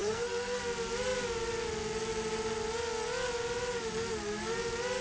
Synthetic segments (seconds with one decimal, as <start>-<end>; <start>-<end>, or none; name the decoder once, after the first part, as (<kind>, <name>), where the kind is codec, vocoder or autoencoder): 0.0-0.6 (codec, SNAC)

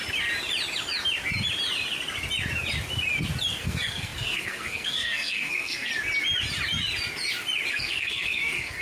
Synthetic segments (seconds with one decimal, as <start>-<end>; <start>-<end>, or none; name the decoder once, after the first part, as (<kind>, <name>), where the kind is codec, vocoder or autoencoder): 3.5-5.9 (codec, SNAC); 7.7-8.8

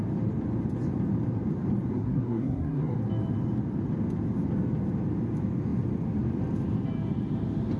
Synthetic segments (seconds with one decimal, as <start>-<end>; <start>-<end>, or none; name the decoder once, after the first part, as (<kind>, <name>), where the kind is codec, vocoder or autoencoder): 1.9-3.0 (codec, SNAC)

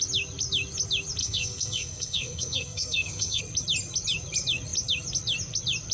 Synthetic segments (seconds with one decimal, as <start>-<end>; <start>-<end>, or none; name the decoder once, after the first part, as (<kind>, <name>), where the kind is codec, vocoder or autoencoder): 1.2-3.4 (codec, SNAC)

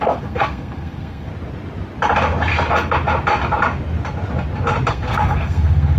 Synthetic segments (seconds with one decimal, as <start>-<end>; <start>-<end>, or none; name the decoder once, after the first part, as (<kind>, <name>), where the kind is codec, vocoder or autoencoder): 0.0-1.3 (codec, SNAC); 4.9-6.0

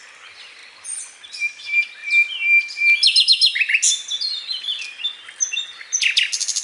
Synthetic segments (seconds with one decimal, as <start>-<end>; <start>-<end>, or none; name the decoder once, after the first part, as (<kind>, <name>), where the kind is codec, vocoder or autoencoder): none

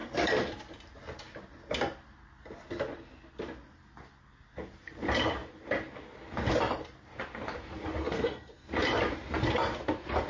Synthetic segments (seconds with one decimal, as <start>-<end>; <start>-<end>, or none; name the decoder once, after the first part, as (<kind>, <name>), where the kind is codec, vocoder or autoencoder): 8.0-8.7 (codec, SNAC)

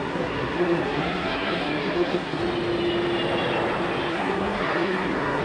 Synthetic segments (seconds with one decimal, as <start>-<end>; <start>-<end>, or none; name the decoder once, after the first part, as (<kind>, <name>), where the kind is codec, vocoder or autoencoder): 0.0-2.4 (codec, SNAC); 4.1-5.4